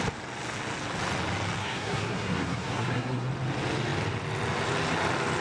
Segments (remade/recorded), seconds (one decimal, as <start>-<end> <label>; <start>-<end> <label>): 0.0-1.6 recorded; 1.6-3.3 remade; 3.3-5.4 recorded